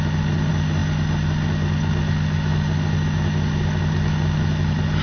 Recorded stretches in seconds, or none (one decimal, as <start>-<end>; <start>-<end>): 0.0-5.0